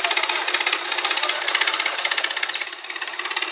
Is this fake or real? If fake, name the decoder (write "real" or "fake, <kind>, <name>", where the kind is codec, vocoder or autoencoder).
real